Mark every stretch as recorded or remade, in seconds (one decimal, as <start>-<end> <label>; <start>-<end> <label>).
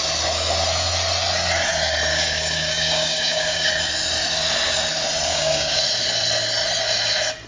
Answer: 0.0-2.1 recorded; 2.1-3.7 remade; 3.7-5.3 recorded; 5.3-5.8 remade; 5.8-7.5 recorded